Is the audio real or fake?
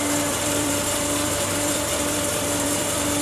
fake